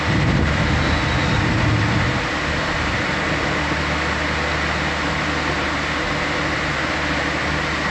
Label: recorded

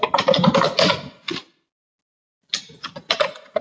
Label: recorded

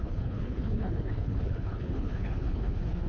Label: remade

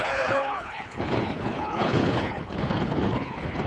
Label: remade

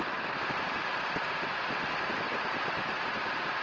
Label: recorded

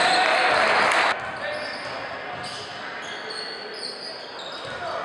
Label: recorded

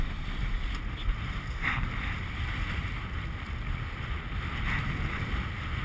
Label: recorded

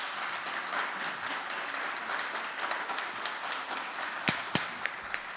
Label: recorded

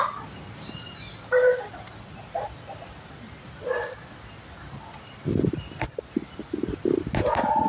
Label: recorded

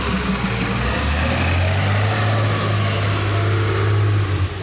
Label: recorded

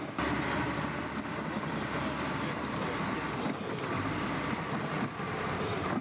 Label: recorded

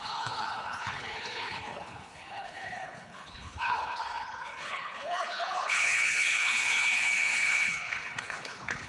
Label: remade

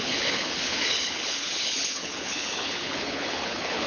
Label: remade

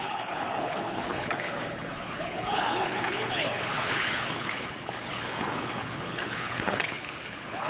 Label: remade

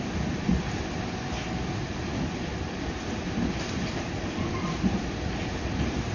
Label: recorded